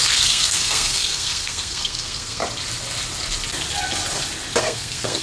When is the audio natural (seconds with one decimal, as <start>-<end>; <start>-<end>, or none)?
2.4-4.6